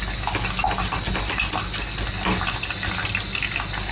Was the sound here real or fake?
real